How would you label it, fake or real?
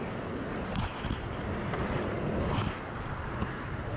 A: real